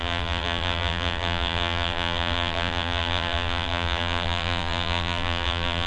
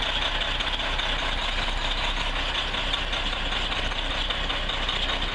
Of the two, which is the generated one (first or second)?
first